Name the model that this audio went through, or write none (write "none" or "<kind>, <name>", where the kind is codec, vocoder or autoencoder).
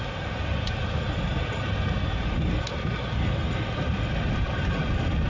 none